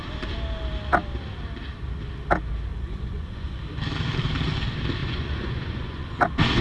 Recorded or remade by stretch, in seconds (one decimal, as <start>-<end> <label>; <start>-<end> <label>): 0.0-2.7 recorded; 2.7-3.6 remade; 3.6-5.0 recorded; 5.0-6.1 remade; 6.1-6.6 recorded